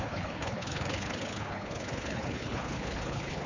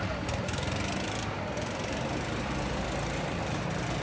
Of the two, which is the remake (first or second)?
first